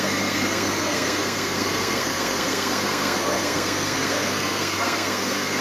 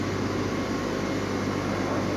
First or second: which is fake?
first